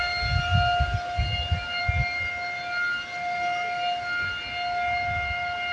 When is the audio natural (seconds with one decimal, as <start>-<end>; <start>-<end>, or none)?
0.0-5.7